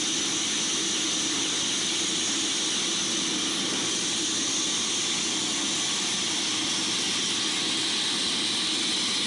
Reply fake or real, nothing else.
real